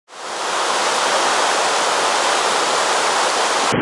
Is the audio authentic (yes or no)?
yes